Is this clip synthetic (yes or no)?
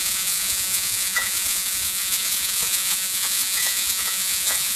yes